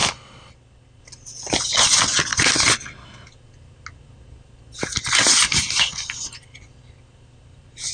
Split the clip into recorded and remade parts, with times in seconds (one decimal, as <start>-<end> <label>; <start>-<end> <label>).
0.0-7.9 recorded